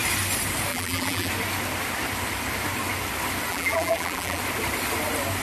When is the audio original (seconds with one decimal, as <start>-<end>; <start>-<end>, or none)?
0.0-0.7; 1.3-3.5; 4.4-5.4